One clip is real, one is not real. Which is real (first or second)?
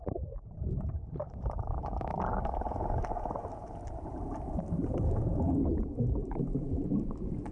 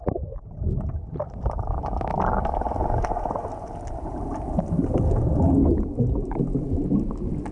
second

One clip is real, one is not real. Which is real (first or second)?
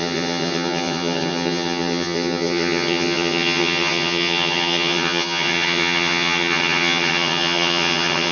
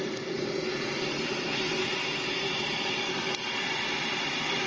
second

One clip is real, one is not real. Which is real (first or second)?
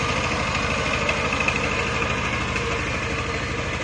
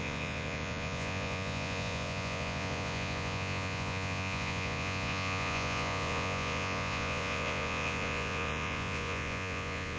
first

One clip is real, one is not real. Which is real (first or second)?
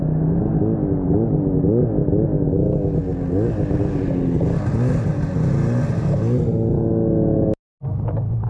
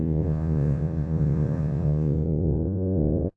first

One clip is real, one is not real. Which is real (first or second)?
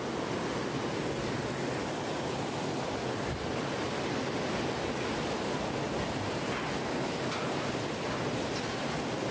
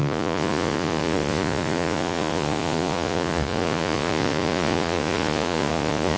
first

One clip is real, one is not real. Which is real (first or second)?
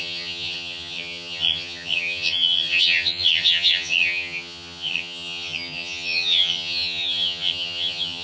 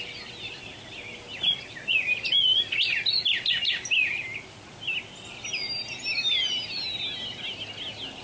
second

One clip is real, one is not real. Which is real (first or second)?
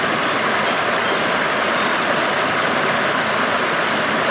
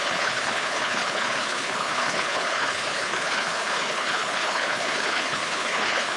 first